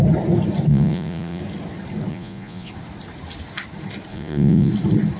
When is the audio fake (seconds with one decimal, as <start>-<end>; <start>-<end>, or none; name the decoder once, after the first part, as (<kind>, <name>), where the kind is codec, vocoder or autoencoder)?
0.7-1.4 (vocoder, Vocos); 2.1-2.7; 4.1-4.7